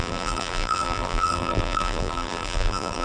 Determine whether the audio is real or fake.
fake